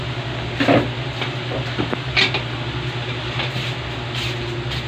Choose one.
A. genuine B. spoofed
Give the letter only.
A